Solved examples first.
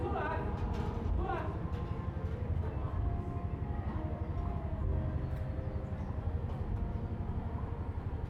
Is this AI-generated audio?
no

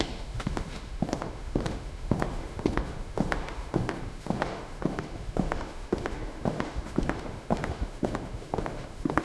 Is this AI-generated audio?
yes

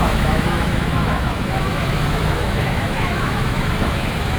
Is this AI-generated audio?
yes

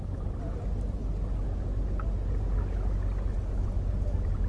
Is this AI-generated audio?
no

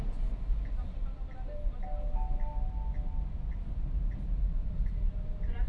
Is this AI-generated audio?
no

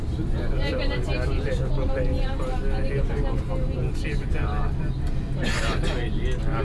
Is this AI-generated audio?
no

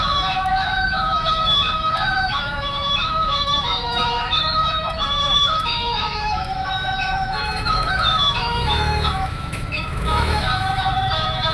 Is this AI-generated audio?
yes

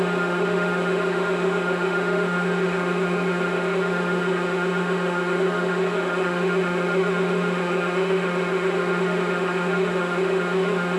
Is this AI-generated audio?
yes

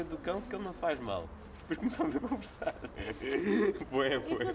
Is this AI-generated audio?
no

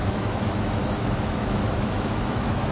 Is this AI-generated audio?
yes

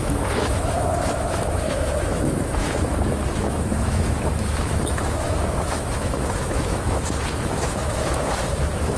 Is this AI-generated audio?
yes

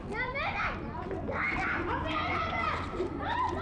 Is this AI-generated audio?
no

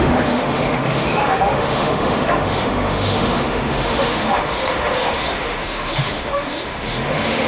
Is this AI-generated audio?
yes